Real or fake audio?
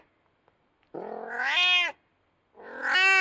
real